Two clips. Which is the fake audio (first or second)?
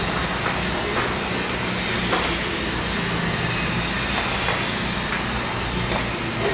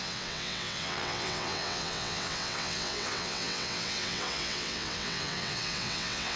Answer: second